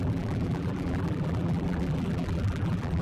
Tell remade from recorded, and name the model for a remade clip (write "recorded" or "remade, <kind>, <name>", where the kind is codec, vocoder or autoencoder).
remade, vocoder, BigVGAN v2